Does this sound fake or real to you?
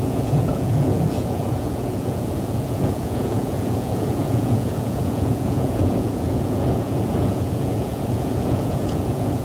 fake